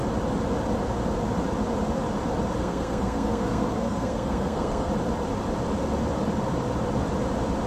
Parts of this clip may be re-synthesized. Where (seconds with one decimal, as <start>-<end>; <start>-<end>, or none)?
2.6-4.9